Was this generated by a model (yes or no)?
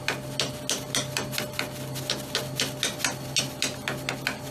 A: no